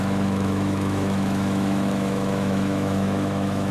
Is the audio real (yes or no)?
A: no